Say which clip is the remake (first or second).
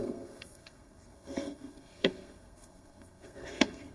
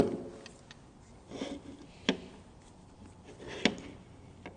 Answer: first